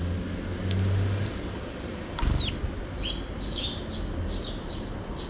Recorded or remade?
recorded